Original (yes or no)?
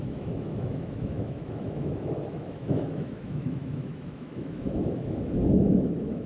no